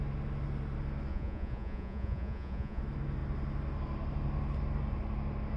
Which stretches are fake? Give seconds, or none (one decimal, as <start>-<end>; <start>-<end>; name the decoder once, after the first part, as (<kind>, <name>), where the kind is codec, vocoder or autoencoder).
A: 1.1-2.8 (vocoder, Vocos)